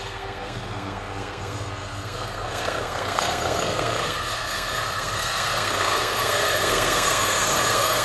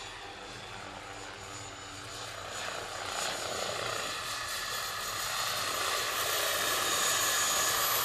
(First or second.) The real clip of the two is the second